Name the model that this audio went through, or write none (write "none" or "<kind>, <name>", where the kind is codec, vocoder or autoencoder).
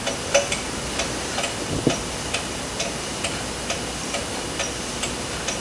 none